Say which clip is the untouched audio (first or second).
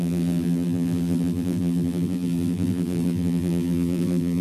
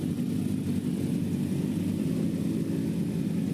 second